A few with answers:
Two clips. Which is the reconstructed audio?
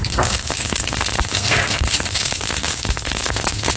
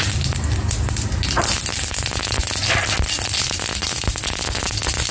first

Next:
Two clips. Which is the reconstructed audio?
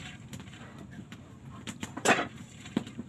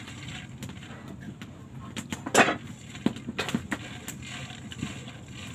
first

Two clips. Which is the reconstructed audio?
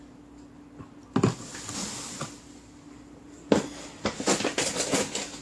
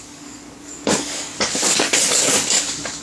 second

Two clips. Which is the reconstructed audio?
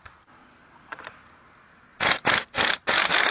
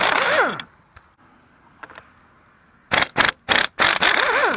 first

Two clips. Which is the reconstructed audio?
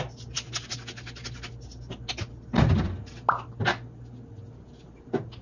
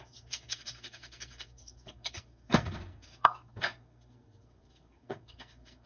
second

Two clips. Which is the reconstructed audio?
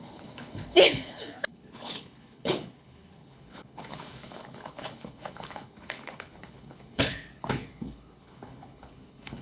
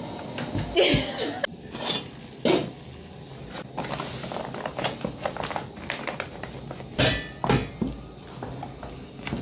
first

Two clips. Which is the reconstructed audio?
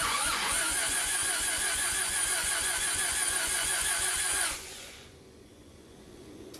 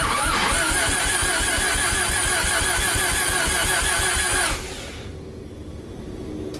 first